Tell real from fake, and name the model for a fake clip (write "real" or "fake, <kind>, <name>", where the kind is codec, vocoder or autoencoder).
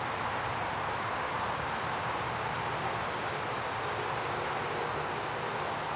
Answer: real